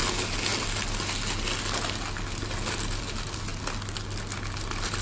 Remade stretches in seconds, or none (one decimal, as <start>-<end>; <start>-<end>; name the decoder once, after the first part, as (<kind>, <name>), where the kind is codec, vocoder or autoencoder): none